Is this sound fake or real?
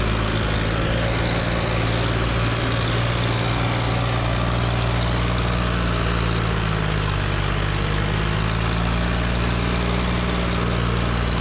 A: real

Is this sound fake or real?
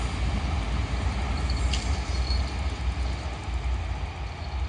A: real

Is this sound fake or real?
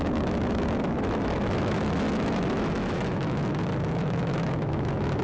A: fake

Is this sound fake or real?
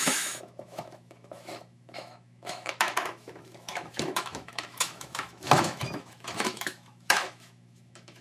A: fake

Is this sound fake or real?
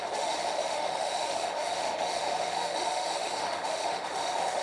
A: fake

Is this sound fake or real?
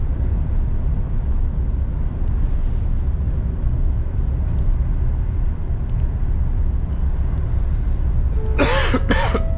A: real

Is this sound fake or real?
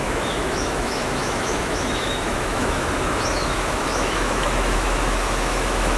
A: fake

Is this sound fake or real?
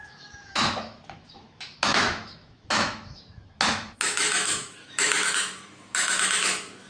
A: fake